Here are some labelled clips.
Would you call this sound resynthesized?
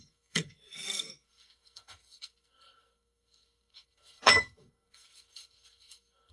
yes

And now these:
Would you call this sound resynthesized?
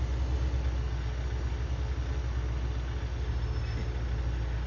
no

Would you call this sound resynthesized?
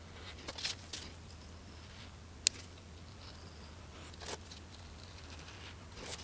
no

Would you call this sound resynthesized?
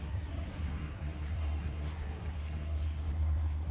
yes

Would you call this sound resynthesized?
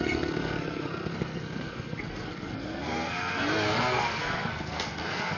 yes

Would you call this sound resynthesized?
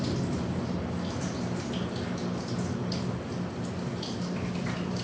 no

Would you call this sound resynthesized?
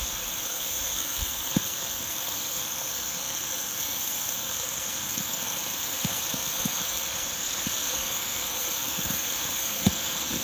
yes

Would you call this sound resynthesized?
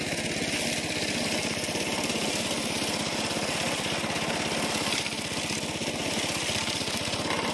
no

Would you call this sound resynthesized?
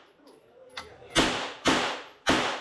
no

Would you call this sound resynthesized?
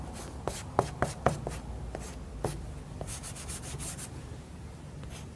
no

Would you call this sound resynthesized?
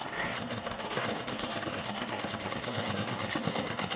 yes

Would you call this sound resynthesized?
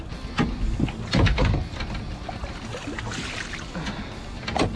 no